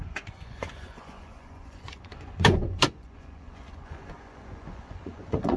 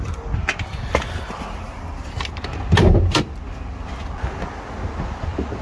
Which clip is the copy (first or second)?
first